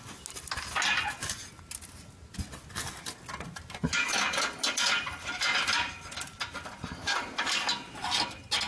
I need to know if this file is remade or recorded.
recorded